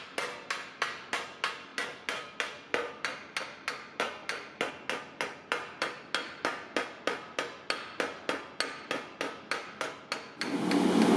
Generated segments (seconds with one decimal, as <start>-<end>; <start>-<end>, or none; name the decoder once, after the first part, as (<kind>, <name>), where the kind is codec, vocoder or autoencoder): none